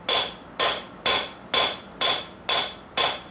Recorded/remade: recorded